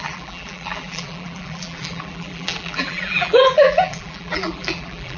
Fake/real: fake